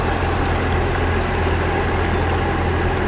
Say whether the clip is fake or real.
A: real